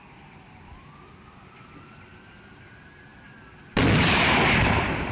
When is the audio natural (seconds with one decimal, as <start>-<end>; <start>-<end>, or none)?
0.0-5.1